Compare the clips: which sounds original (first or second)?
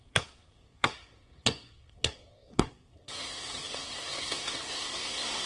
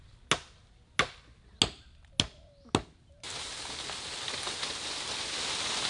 second